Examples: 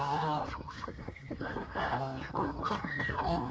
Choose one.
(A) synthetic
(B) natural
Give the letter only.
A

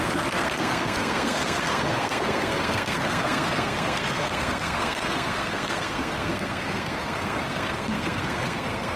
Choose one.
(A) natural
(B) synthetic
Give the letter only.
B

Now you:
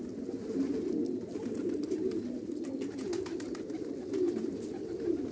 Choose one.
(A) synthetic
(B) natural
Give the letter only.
B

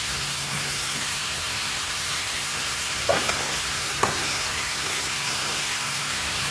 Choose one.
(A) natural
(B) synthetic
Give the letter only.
B